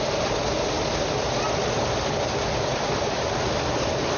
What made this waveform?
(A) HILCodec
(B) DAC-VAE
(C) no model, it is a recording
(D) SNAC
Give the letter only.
C